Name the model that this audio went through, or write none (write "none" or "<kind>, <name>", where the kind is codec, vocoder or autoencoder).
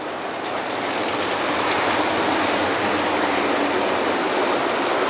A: none